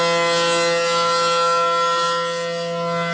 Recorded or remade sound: recorded